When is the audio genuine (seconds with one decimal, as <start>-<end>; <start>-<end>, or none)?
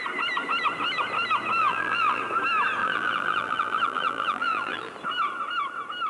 0.0-1.6; 2.2-2.8; 4.9-6.1